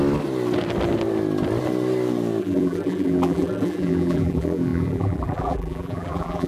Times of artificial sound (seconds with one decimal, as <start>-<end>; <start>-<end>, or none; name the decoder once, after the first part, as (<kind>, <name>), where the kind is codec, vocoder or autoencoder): 2.4-6.5 (vocoder, BigVGAN v2)